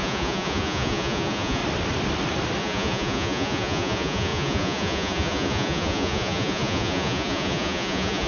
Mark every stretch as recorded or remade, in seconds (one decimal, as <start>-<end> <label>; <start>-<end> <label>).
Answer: 0.0-1.6 remade; 1.6-2.6 recorded; 2.6-8.3 remade